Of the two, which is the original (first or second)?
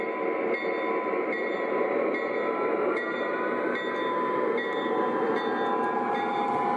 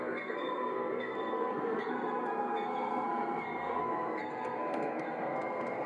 first